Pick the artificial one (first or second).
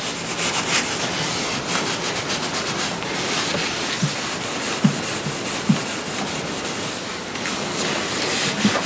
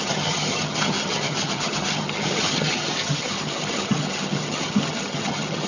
second